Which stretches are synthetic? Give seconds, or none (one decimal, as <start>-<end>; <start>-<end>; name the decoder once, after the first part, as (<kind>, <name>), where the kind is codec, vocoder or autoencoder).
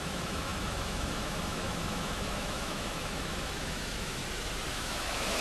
0.0-4.2 (autoencoder, DAC-VAE); 4.7-5.4